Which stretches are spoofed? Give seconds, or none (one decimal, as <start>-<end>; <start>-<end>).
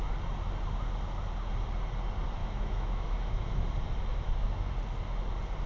2.4-3.6; 4.1-4.7